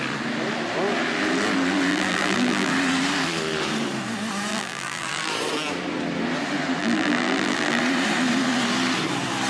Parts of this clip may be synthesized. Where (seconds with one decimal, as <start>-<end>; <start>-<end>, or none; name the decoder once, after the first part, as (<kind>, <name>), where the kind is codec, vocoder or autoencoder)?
1.9-2.7 (vocoder, BigVGAN v2); 4.5-5.3; 6.8-7.8